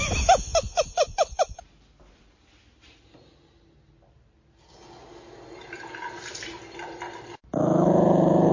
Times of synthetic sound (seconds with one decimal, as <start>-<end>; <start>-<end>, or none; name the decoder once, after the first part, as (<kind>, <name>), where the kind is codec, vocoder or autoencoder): none